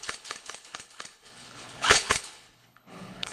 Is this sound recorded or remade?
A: remade